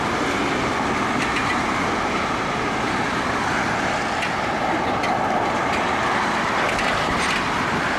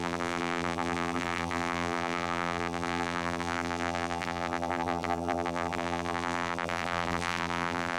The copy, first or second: second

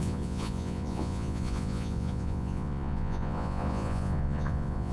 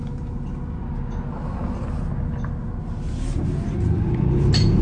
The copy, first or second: first